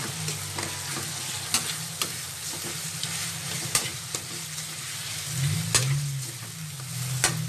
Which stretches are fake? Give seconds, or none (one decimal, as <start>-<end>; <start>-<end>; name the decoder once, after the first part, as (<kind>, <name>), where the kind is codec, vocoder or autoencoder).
3.2-5.3 (vocoder, BigVGAN v2)